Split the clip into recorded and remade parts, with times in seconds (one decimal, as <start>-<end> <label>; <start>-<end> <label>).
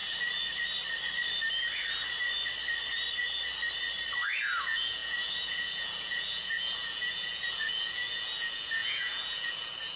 0.0-4.6 recorded; 4.6-10.0 remade